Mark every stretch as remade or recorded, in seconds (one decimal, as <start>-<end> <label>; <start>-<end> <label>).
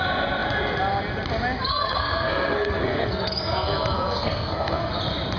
0.0-1.7 recorded; 1.7-4.9 remade; 4.9-5.4 recorded